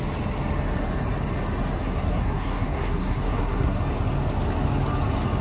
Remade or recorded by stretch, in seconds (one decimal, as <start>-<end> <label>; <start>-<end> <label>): 0.0-1.8 recorded; 1.8-3.8 remade; 3.8-5.4 recorded